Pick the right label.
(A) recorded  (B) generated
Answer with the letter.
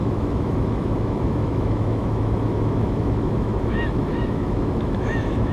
B